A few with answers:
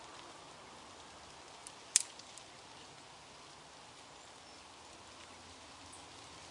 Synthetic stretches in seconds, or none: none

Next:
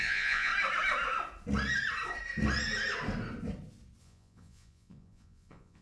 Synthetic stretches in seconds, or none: 0.0-0.5 (vocoder, Vocos); 4.0-5.8

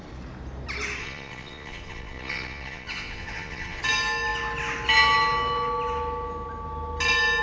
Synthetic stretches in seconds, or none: 1.0-3.8 (vocoder, Vocos)

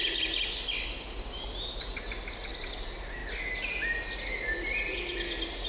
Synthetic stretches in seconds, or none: none

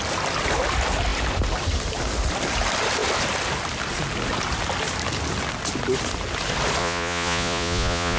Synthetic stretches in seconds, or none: 6.8-8.2 (vocoder, Vocos)